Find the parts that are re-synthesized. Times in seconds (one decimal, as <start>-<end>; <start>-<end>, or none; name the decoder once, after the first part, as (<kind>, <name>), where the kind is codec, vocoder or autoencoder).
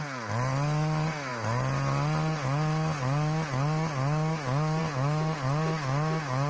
none